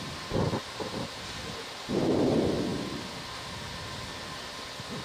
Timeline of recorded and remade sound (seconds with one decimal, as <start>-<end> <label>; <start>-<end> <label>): 0.0-5.0 recorded